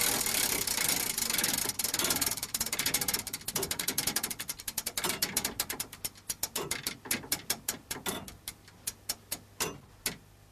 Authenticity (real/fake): real